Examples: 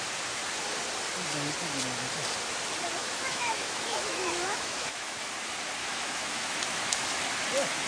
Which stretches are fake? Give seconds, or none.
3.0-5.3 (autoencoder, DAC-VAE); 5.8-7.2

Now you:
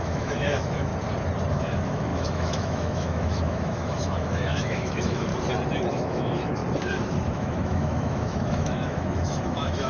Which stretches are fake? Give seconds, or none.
0.0-0.9 (autoencoder, DAC-VAE); 1.5-5.3; 5.9-6.6; 7.3-9.9

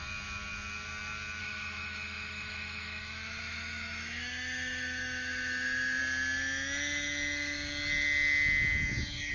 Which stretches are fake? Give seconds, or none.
1.4-6.0 (autoencoder, DAC-VAE)

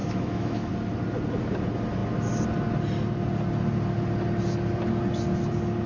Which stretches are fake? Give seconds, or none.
0.0-0.7 (autoencoder, DAC-VAE)

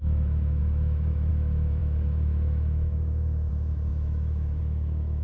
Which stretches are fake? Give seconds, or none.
0.0-5.2 (autoencoder, DAC-VAE)

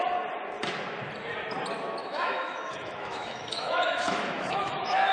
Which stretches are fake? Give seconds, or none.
2.0-5.1 (autoencoder, DAC-VAE)

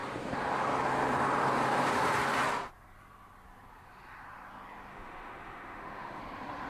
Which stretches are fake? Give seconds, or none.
4.9-6.2 (autoencoder, DAC-VAE)

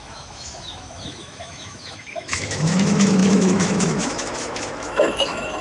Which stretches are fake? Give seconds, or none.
0.0-5.6 (autoencoder, DAC-VAE)